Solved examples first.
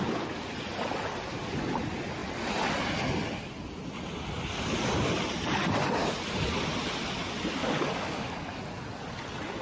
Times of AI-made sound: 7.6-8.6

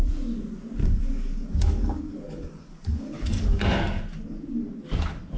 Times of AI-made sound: 0.8-4.0

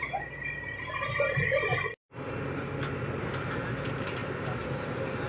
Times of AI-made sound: none

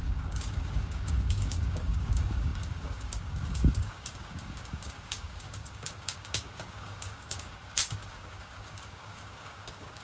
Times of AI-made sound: 0.0-10.0

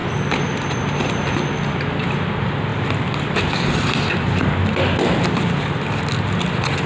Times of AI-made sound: none

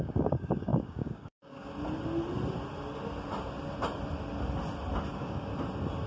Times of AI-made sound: 0.0-1.7; 5.1-5.5